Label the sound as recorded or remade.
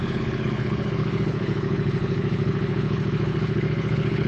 remade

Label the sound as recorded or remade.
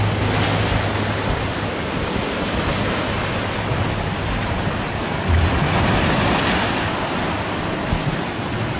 recorded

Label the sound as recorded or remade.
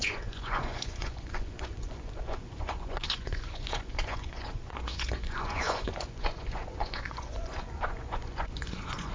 remade